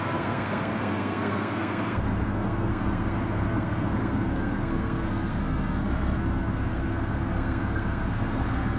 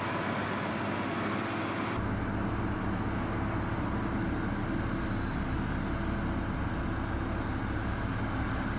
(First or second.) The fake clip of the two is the first